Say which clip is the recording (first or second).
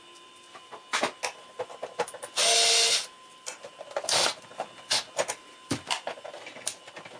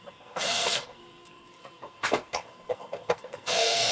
first